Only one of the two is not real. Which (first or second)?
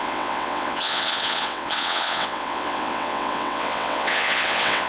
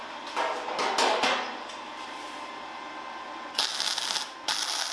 first